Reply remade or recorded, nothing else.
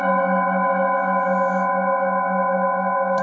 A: remade